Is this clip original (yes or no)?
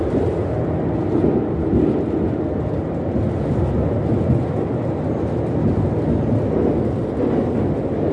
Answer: yes